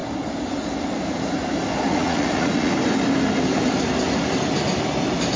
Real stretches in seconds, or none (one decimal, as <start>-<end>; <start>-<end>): 0.0-1.9; 2.7-5.4